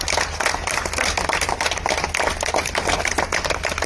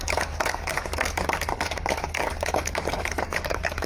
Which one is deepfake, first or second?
second